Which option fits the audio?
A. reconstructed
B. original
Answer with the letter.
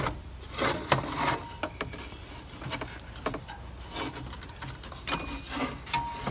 B